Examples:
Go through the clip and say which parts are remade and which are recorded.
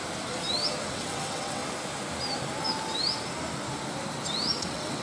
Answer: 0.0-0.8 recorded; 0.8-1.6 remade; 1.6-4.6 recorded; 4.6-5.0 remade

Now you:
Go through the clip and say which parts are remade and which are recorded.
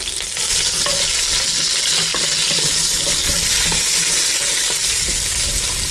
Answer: 0.0-5.9 recorded